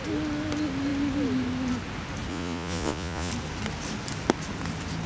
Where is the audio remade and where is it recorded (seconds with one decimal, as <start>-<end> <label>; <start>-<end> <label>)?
0.0-2.3 recorded; 2.3-3.3 remade; 3.3-5.1 recorded